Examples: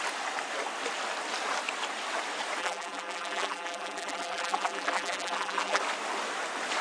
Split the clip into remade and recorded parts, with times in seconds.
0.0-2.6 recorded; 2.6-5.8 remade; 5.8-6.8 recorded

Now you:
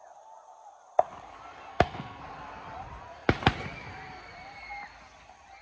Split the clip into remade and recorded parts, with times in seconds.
0.0-1.7 recorded; 1.7-2.2 remade; 2.2-5.6 recorded

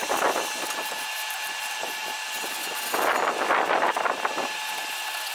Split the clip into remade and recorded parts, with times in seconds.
0.0-5.3 recorded

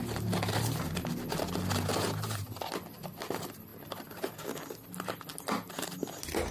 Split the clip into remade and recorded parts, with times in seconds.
0.0-6.5 recorded